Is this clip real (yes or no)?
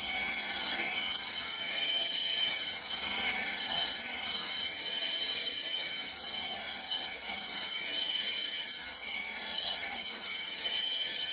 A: no